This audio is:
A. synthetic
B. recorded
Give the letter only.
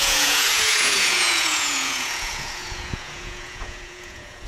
A